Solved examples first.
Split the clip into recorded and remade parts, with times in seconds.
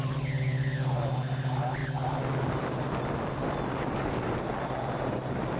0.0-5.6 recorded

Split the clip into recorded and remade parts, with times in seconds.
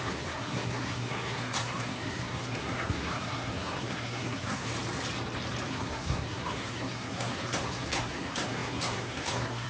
0.0-4.7 remade; 4.7-5.7 recorded; 5.7-9.7 remade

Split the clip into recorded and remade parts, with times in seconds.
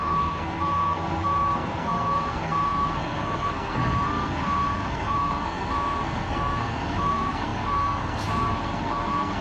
0.0-9.4 remade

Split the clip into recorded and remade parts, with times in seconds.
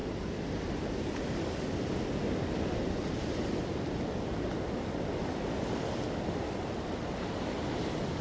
0.0-8.2 recorded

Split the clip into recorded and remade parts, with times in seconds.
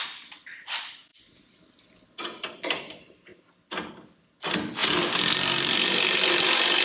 0.0-6.8 recorded